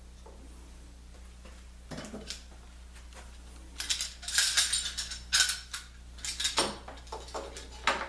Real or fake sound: real